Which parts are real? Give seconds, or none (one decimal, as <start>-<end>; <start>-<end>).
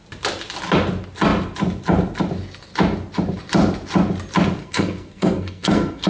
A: 0.0-4.6